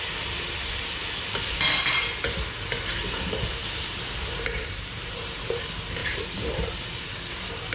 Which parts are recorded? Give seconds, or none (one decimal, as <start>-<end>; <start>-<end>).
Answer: 0.0-3.6; 5.6-6.0; 7.0-7.7